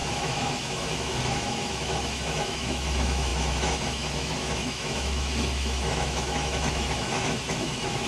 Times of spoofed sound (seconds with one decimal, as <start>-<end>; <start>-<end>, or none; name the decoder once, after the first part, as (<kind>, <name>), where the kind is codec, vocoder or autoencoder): 0.0-8.1 (autoencoder, DAC-VAE)